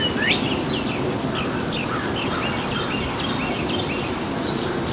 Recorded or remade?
recorded